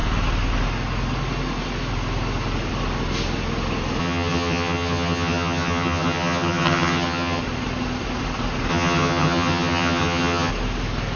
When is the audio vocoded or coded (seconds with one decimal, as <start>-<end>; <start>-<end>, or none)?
4.0-7.4; 8.7-10.5